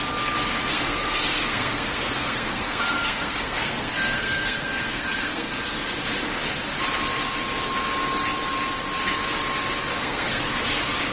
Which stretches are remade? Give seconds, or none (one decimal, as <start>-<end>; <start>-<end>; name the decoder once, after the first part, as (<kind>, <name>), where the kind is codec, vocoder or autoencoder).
0.7-5.5 (codec, SNAC); 10.0-10.6